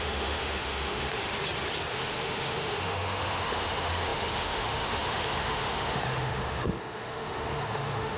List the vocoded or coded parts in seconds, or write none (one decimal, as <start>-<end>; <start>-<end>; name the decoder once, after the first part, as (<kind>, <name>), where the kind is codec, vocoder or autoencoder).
0.0-1.3 (autoencoder, DAC-VAE); 1.9-8.2